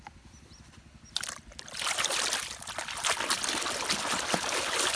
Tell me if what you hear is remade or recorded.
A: recorded